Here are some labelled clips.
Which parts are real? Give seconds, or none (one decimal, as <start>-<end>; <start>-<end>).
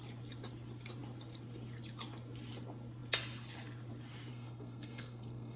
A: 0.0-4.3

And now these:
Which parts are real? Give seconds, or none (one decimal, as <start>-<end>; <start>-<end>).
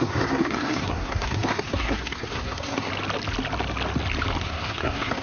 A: 2.9-4.4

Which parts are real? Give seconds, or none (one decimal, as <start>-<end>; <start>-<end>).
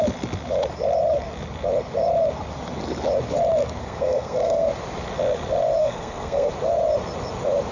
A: 0.0-3.8; 4.7-5.8; 6.5-7.7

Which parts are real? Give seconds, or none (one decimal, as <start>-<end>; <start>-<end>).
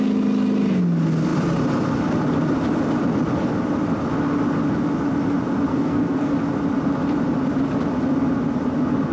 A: 0.0-5.7; 6.3-9.1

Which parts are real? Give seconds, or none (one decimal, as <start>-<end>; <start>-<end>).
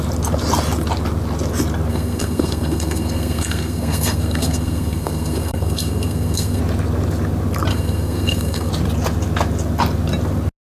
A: 0.0-1.9; 6.6-7.7; 8.7-10.7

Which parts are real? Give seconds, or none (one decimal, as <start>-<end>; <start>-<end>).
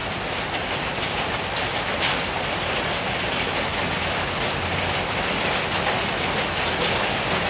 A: 0.0-7.5